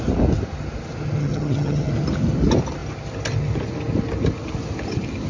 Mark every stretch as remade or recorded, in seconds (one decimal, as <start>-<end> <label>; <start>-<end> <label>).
0.0-1.2 recorded; 1.2-1.9 remade; 1.9-5.3 recorded